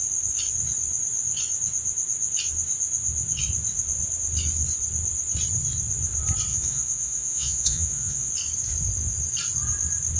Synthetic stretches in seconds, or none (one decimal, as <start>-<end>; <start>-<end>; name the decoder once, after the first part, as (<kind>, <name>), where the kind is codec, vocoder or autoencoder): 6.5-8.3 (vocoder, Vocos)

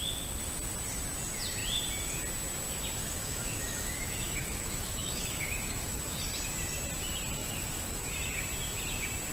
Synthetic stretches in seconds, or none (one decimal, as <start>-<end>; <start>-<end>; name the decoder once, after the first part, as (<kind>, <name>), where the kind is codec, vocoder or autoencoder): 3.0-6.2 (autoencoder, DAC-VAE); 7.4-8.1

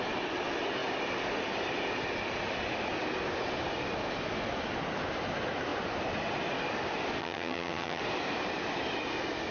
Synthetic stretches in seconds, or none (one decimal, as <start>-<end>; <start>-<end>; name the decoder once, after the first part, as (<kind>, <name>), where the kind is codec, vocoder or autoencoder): 7.2-8.0 (vocoder, HiFi-GAN)

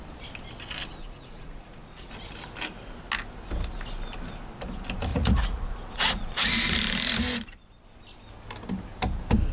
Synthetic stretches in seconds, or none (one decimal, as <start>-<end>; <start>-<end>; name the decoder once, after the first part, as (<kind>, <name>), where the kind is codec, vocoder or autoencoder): 1.0-2.1 (vocoder, Vocos); 5.1-6.5

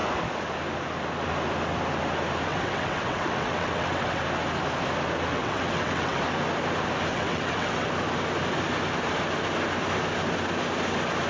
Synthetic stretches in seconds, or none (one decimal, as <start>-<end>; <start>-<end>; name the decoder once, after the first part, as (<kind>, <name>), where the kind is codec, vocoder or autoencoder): 2.5-4.2 (vocoder, WaveNeXt); 5.3-6.2; 7.1-7.9

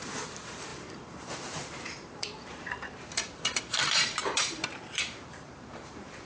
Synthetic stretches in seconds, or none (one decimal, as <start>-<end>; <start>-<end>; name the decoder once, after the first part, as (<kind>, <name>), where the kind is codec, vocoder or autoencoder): 0.0-6.3 (vocoder, BigVGAN v2)